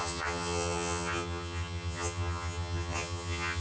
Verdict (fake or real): fake